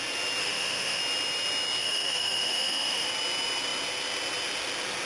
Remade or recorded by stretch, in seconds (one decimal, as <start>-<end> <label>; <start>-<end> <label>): 0.0-0.4 recorded; 0.4-1.0 remade; 1.0-1.8 recorded; 1.8-3.1 remade; 3.1-5.0 recorded

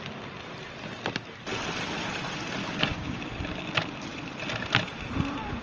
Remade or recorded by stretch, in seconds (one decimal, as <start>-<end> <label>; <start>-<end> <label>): 0.0-2.6 recorded; 2.6-3.3 remade; 3.3-5.6 recorded

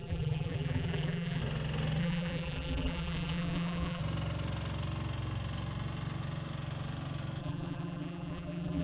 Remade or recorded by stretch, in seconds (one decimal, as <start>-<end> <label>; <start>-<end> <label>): 0.0-1.4 remade; 1.4-2.0 recorded; 2.0-4.0 remade; 4.0-7.4 recorded; 7.4-8.8 remade

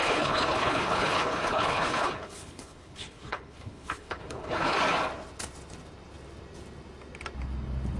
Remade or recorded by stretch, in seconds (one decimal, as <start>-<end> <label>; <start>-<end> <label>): 0.0-4.8 remade; 4.8-8.0 recorded

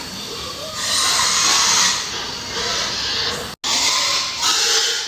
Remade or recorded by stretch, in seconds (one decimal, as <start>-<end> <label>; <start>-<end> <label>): 0.0-5.1 recorded